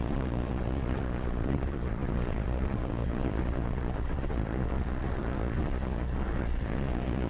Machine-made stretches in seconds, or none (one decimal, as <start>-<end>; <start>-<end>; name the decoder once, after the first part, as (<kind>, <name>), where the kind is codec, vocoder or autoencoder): 0.0-7.3 (vocoder, Vocos)